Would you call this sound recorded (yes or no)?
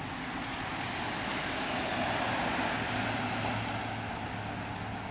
yes